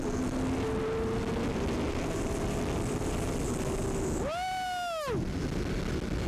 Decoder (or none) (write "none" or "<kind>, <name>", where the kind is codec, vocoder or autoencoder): none